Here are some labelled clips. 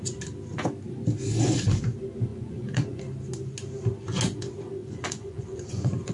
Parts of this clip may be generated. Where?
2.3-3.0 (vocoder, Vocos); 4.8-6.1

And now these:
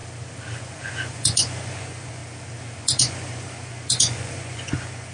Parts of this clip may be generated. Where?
0.6-2.2 (vocoder, Vocos); 2.8-5.1